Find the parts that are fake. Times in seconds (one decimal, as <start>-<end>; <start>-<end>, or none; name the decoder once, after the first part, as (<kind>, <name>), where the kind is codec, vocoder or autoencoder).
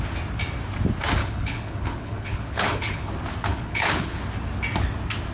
1.2-3.1 (codec, HILCodec); 3.5-4.2